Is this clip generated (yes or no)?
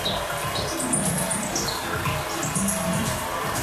no